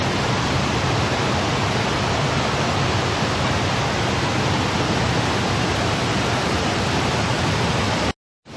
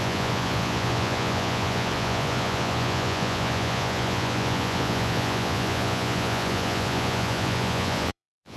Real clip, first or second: first